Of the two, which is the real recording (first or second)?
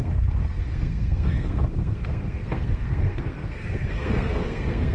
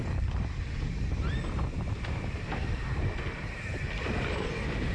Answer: second